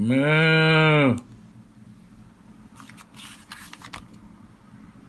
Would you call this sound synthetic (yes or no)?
no